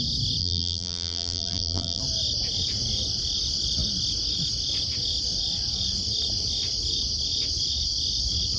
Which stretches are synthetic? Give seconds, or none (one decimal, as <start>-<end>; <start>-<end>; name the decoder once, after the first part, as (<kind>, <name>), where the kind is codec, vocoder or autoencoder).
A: 0.4-2.0 (vocoder, BigVGAN v2)